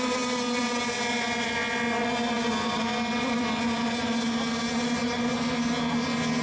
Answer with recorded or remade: recorded